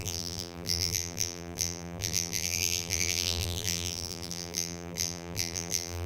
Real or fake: fake